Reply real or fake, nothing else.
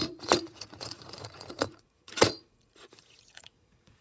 fake